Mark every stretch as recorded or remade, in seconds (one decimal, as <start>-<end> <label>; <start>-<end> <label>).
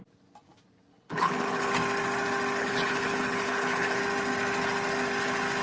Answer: 0.0-0.9 recorded; 0.9-1.7 remade; 1.7-2.6 recorded; 2.6-4.0 remade; 4.0-5.6 recorded